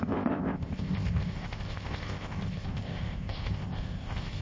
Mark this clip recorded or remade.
remade